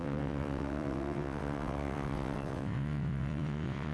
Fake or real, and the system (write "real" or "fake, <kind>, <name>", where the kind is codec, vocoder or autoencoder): fake, vocoder, WaveNeXt